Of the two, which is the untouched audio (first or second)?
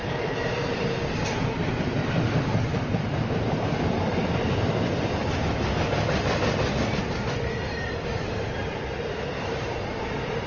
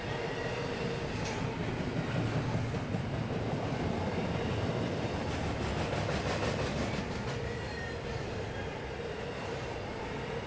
second